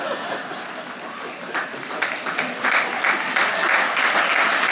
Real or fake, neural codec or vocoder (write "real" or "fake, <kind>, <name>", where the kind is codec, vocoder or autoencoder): real